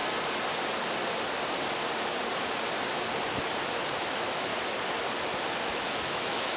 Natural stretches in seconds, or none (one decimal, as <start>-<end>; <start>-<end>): 0.0-4.0; 4.5-5.6